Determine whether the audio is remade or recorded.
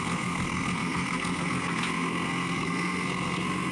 remade